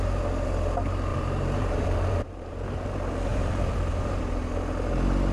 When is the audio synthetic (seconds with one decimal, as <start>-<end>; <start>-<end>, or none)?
1.1-2.8; 3.3-4.1